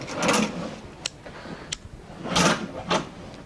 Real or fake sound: real